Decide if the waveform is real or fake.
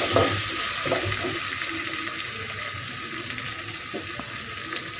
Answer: real